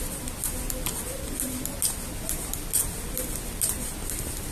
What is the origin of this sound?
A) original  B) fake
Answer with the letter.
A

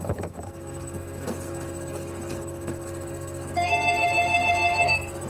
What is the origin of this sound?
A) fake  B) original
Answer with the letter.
A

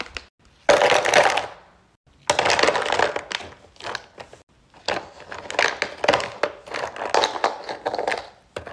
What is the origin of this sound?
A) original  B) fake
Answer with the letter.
A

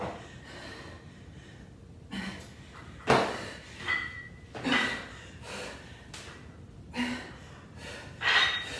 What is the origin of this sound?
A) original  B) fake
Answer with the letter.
A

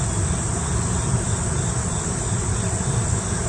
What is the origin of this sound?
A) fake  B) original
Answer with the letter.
B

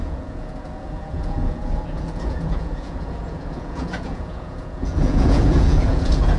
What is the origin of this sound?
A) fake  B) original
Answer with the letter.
A